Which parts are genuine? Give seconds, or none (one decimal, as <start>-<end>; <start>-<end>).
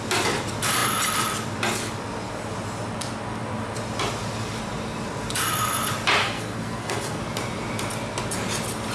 0.0-6.2; 7.2-8.9